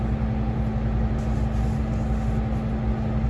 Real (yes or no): yes